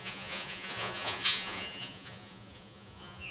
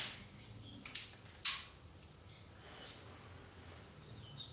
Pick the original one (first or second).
second